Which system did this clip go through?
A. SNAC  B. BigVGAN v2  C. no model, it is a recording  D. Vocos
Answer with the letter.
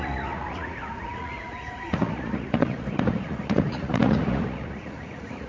D